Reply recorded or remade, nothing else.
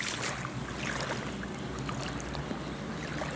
recorded